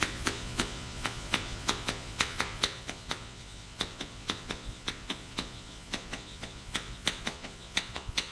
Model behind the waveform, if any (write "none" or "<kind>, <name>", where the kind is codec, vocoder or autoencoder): vocoder, Vocos